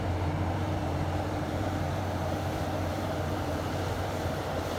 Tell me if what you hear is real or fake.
fake